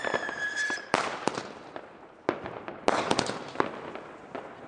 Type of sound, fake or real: real